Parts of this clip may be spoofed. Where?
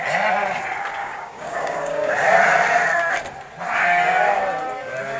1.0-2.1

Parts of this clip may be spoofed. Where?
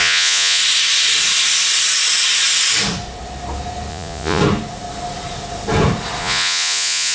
0.0-0.6; 3.9-4.4; 6.2-7.1